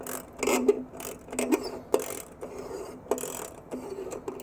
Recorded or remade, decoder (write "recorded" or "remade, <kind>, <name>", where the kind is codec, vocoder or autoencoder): recorded